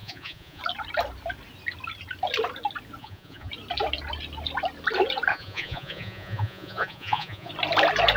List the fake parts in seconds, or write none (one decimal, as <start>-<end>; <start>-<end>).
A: 0.0-0.6; 3.0-3.5; 5.3-7.5

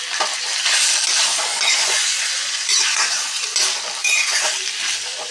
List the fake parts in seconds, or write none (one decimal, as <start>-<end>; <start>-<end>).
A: 1.5-3.4; 4.0-4.5

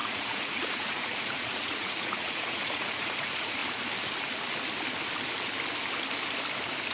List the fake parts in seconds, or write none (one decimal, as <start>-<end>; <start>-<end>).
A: 0.0-3.6

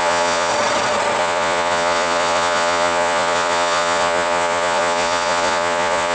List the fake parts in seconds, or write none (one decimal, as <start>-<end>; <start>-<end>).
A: 0.0-0.5; 1.2-6.1

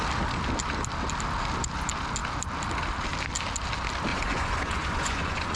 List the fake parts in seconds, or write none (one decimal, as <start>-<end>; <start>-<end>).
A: 4.1-5.6

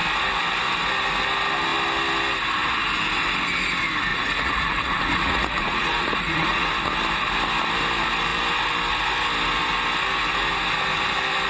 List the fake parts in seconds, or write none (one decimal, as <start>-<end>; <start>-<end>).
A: 4.1-6.7

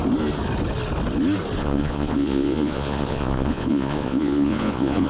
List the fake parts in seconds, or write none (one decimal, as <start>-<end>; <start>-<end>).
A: 1.6-5.1

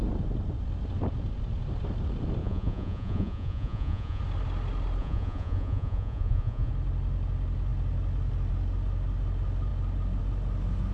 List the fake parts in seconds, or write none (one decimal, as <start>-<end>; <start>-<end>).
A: 2.4-4.2; 5.0-6.7